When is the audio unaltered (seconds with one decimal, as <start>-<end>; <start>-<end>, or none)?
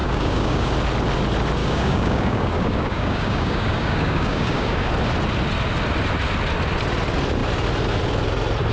0.7-1.6; 4.9-8.7